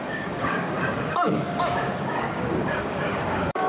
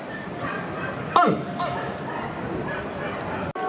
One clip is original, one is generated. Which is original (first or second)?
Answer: second